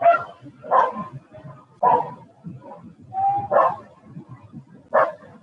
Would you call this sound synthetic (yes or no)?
no